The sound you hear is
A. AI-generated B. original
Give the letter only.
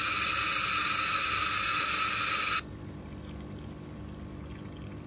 B